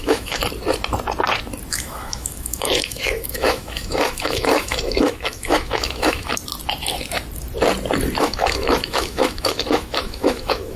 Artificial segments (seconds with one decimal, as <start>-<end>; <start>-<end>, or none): 0.0-0.4; 1.7-6.3; 8.2-10.8